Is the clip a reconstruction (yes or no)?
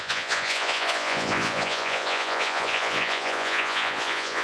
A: yes